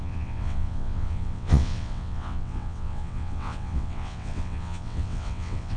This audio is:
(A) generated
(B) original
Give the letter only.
A